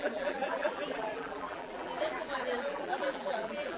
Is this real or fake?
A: fake